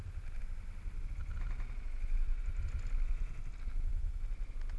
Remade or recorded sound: recorded